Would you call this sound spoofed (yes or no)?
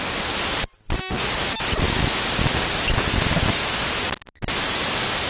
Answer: no